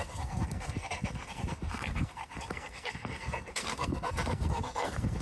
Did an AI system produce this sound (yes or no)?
yes